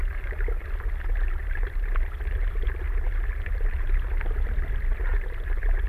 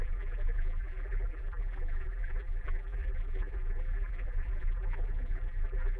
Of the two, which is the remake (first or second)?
second